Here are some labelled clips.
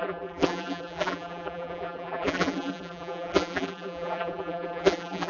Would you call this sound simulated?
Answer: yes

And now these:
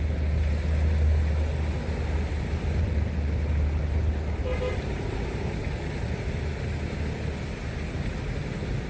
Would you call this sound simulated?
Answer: no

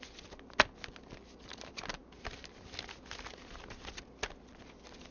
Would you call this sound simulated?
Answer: no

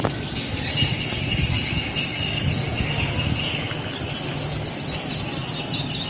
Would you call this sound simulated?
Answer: no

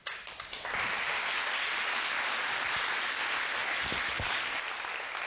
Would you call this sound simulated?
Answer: no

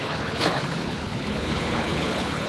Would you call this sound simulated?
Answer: yes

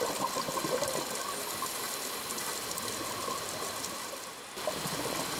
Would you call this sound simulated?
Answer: no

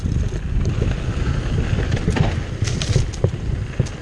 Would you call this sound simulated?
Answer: no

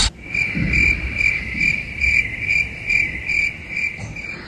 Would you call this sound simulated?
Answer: no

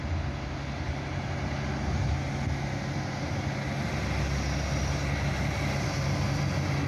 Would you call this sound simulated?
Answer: no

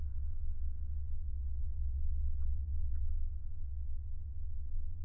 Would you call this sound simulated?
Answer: yes